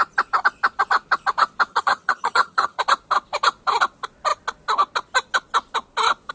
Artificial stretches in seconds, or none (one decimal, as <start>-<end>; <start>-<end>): 1.7-2.8